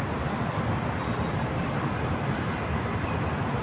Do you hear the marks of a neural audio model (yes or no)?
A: no